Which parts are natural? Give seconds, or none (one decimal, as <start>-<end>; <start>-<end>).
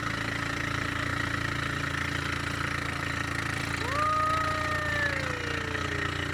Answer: 0.0-6.3